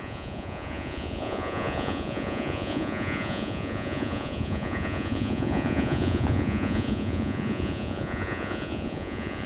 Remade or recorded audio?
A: remade